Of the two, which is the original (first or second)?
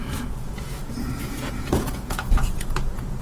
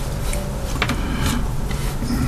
second